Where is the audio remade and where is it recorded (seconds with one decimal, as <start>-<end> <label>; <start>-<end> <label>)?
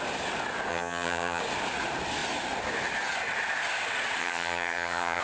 0.0-0.7 recorded; 0.7-1.4 remade; 1.4-4.2 recorded; 4.2-5.2 remade